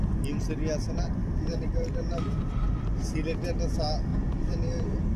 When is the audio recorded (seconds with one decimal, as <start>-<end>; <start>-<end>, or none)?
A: 0.0-1.2; 2.8-4.1